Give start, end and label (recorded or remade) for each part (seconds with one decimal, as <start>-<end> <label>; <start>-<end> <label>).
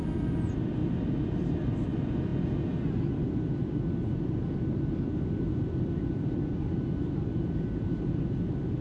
0.0-2.3 remade; 2.3-6.6 recorded; 6.6-8.8 remade